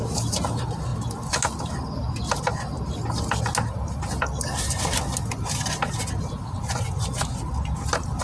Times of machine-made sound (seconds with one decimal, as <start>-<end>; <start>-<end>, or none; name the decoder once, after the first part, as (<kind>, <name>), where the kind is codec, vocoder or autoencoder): none